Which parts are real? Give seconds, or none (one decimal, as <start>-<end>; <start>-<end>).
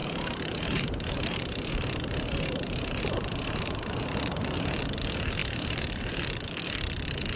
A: 4.4-5.4; 6.1-7.4